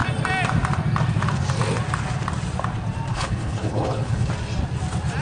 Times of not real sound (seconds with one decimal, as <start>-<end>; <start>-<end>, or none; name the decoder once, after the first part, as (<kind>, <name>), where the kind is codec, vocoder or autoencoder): 3.1-4.3 (codec, HILCodec)